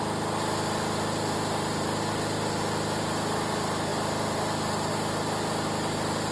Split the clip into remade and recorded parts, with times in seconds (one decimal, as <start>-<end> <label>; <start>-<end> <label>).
0.0-6.3 recorded